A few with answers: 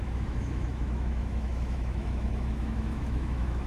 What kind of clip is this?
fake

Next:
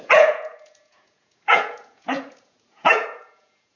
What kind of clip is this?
fake